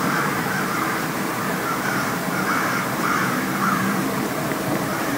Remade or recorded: remade